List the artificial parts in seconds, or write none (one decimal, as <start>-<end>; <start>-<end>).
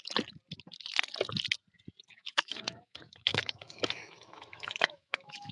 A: 2.1-5.5